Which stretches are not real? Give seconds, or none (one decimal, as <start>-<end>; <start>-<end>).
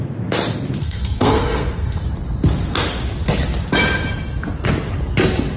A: 0.8-2.0